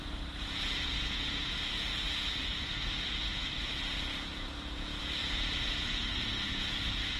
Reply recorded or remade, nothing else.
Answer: remade